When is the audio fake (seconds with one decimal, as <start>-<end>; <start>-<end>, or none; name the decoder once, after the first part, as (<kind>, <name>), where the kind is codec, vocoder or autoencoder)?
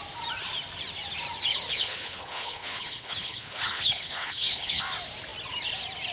1.7-4.8 (codec, HILCodec)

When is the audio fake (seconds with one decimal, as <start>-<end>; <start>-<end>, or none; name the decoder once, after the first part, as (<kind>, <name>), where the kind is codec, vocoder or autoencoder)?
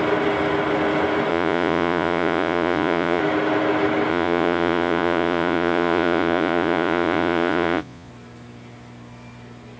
1.3-3.2 (vocoder, Vocos); 4.1-8.1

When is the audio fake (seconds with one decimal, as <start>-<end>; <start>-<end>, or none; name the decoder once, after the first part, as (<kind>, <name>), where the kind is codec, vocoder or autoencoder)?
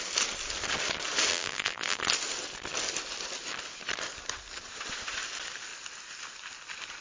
1.3-2.0 (vocoder, BigVGAN v2)